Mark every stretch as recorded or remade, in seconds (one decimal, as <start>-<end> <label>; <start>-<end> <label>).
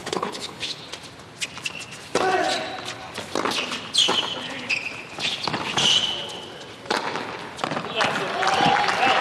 0.0-0.8 remade; 0.8-9.2 recorded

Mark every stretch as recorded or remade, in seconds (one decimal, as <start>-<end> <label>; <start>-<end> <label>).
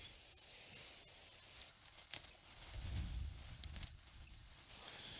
0.0-1.7 recorded; 1.7-4.7 remade; 4.7-5.2 recorded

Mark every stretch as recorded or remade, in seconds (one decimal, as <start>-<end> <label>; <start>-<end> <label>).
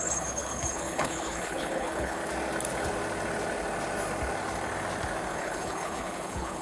0.0-2.2 remade; 2.2-5.3 recorded; 5.3-6.6 remade